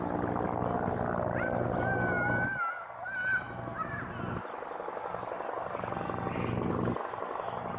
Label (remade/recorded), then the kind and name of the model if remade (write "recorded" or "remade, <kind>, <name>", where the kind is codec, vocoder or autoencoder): recorded